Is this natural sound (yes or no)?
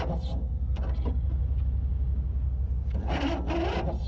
yes